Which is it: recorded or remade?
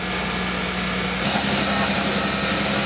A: recorded